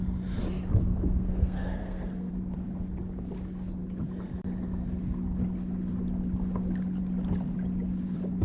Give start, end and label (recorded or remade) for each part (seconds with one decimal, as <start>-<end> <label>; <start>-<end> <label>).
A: 0.0-0.8 recorded; 0.8-2.3 remade; 2.3-8.4 recorded